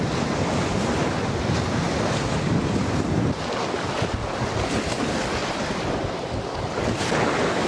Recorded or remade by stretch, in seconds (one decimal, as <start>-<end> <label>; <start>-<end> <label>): 0.0-1.8 recorded; 1.8-3.4 remade; 3.4-5.4 recorded; 5.4-6.1 remade; 6.1-7.7 recorded